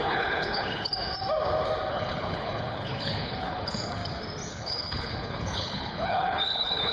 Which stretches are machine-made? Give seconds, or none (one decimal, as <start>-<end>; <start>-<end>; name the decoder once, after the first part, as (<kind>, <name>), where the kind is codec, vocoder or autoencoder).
0.0-0.9 (codec, HILCodec); 1.9-4.0; 4.5-6.9